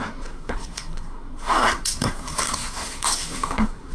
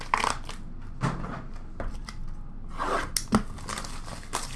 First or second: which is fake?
first